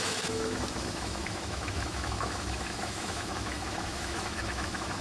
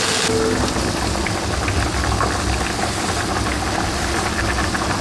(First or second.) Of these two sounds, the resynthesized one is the first